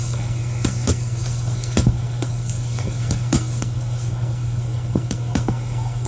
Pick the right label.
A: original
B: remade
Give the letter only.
B